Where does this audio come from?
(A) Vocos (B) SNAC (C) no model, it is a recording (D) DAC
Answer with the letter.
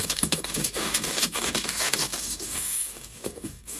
D